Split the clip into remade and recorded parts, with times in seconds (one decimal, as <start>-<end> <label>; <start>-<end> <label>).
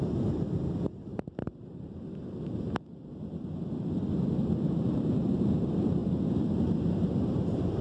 0.0-6.0 remade; 6.0-6.9 recorded; 6.9-7.8 remade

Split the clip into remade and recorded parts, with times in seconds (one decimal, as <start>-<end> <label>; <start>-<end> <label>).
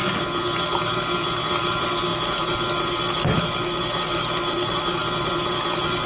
0.0-6.1 recorded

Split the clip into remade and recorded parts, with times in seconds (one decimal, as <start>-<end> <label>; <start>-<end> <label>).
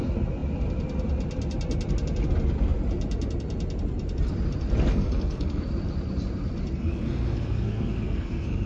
0.0-4.9 recorded; 4.9-5.6 remade; 5.6-6.8 recorded; 6.8-8.7 remade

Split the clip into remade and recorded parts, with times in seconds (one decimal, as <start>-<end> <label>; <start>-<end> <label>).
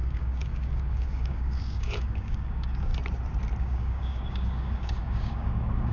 0.0-2.9 remade; 2.9-3.6 recorded; 3.6-5.9 remade